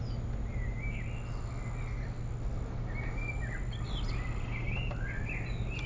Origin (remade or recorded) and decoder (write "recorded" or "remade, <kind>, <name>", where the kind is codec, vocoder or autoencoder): recorded